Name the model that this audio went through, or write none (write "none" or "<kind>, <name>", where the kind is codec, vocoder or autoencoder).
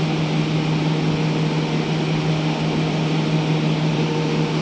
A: none